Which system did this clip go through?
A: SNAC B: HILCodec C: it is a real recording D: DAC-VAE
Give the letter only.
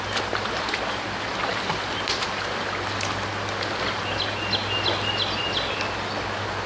C